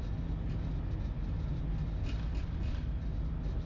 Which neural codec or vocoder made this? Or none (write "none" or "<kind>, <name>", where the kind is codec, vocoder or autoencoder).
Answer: none